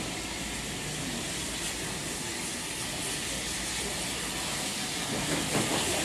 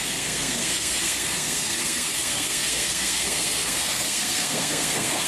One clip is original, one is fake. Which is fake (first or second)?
second